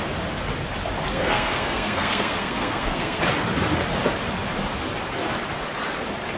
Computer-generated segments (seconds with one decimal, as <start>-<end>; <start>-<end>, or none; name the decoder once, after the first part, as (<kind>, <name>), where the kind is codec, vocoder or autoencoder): 1.1-3.2 (codec, SNAC)